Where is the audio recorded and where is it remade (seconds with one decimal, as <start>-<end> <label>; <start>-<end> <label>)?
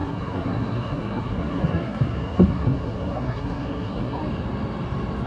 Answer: 0.0-4.2 remade; 4.2-5.3 recorded